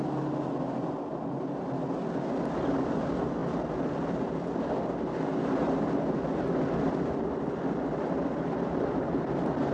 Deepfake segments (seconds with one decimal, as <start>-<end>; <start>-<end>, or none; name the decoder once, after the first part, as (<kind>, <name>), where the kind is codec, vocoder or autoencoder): none